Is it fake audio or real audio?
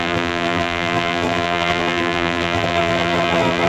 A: fake